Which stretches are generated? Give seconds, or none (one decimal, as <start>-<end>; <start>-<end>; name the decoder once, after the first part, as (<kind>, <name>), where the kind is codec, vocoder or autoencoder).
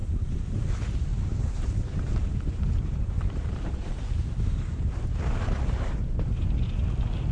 0.0-0.5 (vocoder, BigVGAN v2); 1.1-4.9